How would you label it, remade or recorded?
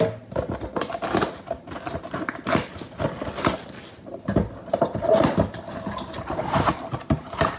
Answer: recorded